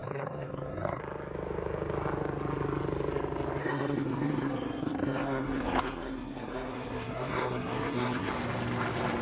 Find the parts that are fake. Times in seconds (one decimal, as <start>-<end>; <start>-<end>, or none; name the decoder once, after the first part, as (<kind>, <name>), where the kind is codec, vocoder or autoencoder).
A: 0.0-1.0 (codec, SNAC); 3.6-8.3